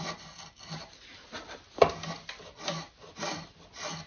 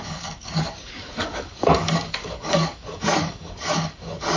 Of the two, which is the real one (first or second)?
first